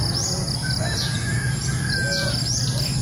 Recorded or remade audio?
recorded